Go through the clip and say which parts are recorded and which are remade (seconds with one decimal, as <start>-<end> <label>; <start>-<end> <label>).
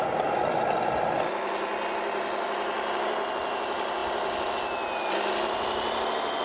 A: 0.0-6.4 recorded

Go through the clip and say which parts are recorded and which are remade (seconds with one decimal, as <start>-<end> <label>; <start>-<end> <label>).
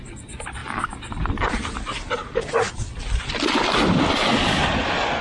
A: 0.0-5.2 recorded